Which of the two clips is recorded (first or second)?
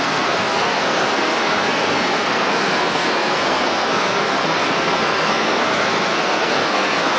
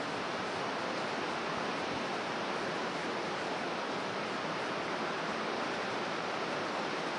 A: second